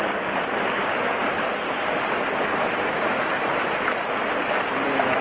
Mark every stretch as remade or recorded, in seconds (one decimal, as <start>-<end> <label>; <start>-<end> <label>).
0.0-5.2 recorded